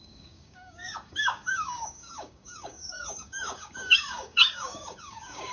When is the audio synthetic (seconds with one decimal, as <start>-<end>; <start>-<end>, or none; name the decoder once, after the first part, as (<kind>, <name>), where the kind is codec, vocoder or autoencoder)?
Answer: 0.0-5.5 (codec, DAC)